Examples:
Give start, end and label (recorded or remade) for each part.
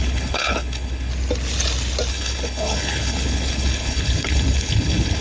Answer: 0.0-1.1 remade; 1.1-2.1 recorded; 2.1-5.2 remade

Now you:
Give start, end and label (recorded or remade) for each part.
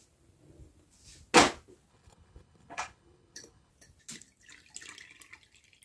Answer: 0.0-1.9 recorded; 1.9-3.7 remade; 3.7-5.8 recorded